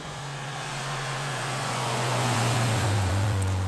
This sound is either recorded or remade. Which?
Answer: remade